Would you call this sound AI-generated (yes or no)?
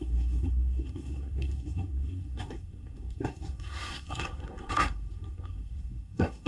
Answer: yes